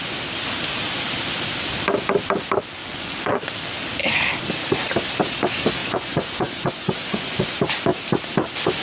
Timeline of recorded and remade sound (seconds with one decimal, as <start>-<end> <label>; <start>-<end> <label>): 0.0-2.8 recorded; 2.8-3.4 remade; 3.4-5.8 recorded; 5.8-7.5 remade; 7.5-8.8 recorded